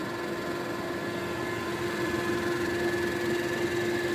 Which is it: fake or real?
real